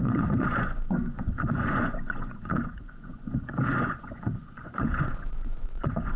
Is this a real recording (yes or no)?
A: no